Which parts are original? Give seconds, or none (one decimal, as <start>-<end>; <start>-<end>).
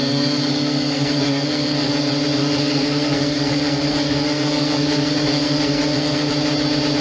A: 1.9-2.4; 6.3-7.0